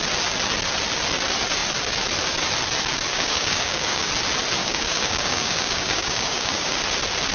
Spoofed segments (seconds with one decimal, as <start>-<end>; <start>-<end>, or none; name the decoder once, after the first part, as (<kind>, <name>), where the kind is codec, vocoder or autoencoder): 3.1-4.1 (codec, DAC); 4.6-6.8